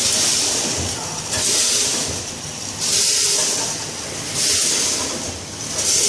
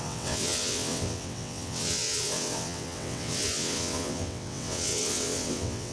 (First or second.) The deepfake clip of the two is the second